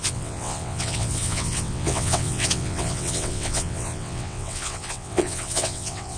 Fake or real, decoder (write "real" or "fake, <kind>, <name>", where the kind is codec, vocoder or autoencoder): fake, vocoder, WaveNeXt